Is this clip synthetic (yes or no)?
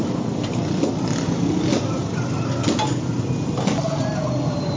no